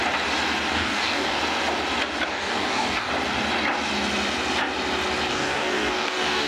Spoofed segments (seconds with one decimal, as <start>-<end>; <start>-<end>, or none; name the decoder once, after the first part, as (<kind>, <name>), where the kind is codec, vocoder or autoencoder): 0.7-1.4 (codec, DAC); 2.3-3.1; 5.3-6.5